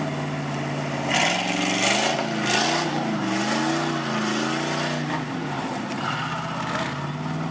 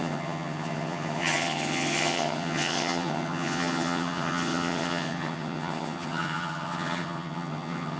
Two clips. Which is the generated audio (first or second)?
second